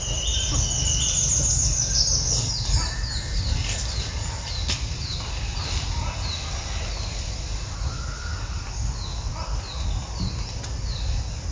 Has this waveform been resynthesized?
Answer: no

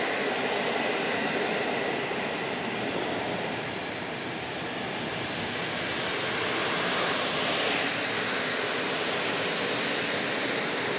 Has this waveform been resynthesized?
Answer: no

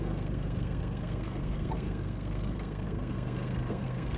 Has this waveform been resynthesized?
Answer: yes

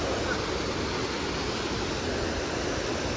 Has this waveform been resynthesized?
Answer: no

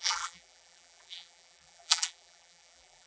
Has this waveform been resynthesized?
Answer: yes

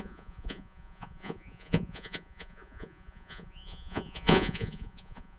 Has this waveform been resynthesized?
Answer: yes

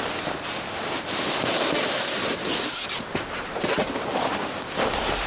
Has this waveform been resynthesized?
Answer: no